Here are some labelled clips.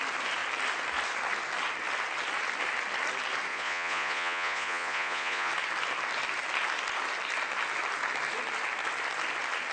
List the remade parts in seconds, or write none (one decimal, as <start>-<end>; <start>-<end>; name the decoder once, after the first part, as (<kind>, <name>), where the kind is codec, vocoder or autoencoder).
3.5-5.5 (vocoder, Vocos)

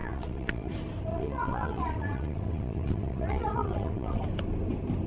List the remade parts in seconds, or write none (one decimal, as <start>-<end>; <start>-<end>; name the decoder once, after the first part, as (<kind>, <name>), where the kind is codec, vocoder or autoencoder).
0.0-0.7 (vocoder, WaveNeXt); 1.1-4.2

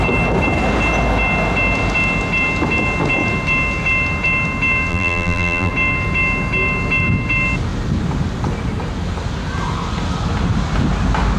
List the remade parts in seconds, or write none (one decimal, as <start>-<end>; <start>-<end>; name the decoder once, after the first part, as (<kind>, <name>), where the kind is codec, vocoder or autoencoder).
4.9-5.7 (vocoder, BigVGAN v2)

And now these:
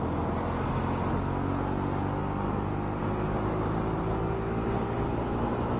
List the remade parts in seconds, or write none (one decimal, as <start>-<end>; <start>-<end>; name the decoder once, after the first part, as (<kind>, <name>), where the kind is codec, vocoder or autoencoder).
none

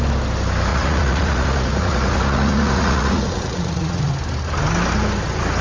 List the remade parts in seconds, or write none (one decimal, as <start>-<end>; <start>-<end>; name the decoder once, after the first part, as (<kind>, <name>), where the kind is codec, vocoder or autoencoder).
0.7-4.1 (vocoder, Vocos)

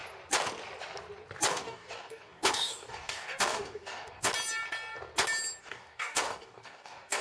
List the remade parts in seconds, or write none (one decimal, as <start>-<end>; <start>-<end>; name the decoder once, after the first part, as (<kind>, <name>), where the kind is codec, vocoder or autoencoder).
1.5-4.3 (codec, DAC); 5.6-7.2

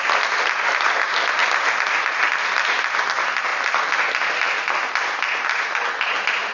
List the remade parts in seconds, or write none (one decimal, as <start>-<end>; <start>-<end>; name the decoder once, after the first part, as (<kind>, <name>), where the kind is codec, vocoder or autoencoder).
none